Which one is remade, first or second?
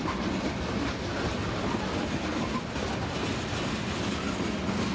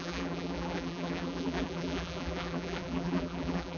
second